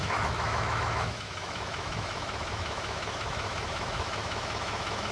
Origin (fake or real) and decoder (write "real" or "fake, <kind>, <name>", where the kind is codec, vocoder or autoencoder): fake, autoencoder, DAC-VAE